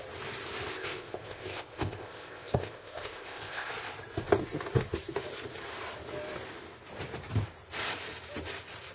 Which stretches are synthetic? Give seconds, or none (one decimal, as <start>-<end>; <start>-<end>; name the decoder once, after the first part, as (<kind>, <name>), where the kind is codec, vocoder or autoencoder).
0.7-3.7 (codec, ZipCodec)